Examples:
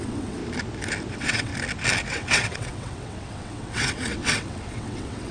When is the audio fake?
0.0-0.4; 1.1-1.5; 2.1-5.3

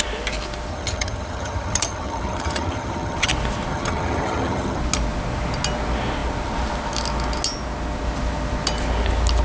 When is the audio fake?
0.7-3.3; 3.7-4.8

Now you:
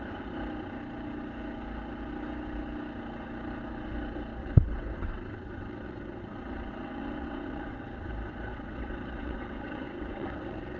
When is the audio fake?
4.4-8.1; 8.5-10.8

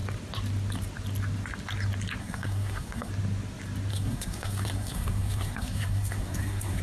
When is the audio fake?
2.2-3.1; 3.9-6.8

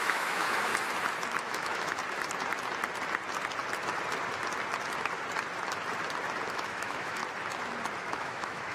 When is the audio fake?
0.0-0.7; 1.4-2.0; 6.5-7.2; 8.0-8.7

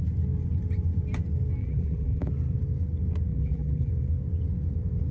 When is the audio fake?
1.6-2.3; 3.3-3.9

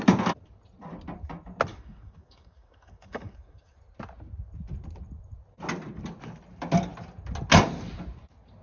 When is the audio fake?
1.7-3.8

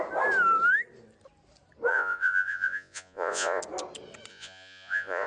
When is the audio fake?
1.9-3.6; 4.3-5.3